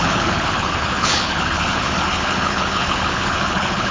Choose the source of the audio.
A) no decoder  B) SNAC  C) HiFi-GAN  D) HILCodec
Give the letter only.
D